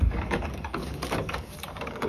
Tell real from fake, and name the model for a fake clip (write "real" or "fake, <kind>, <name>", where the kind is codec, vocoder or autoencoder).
fake, codec, DAC